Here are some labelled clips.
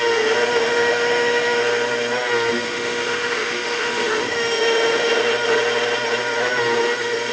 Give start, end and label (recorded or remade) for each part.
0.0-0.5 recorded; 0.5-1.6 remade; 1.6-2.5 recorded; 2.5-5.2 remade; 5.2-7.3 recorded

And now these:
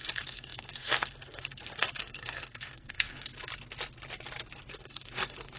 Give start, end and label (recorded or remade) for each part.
0.0-3.3 remade; 3.3-4.7 recorded; 4.7-5.6 remade